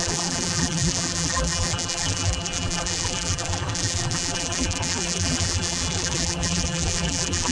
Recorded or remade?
remade